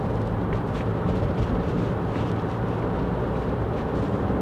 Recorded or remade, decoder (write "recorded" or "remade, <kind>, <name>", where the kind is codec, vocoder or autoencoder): recorded